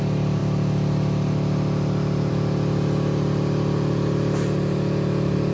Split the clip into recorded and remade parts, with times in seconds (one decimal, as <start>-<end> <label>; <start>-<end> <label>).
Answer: 0.0-5.5 recorded